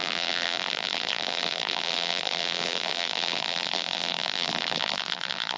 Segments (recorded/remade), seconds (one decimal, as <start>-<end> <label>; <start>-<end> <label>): 0.0-5.6 remade